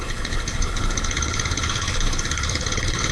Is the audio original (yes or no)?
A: no